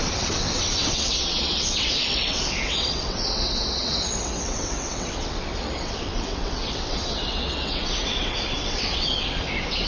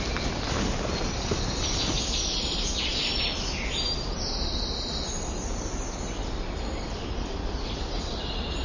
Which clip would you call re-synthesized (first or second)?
first